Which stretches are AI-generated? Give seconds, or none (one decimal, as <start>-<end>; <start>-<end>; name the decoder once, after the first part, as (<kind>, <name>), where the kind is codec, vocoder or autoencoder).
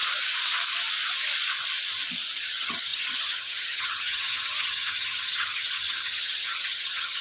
2.4-7.2 (vocoder, HiFi-GAN)